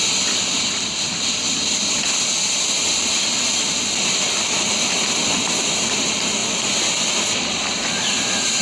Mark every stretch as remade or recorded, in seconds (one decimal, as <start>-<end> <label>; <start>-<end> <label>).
0.0-8.6 recorded

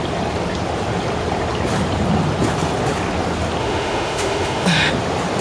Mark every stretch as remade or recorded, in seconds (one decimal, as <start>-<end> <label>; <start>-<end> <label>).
0.0-3.6 recorded; 3.6-4.9 remade; 4.9-5.4 recorded

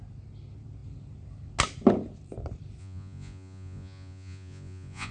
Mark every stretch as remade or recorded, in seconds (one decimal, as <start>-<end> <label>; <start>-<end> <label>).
0.0-2.8 recorded; 2.8-5.1 remade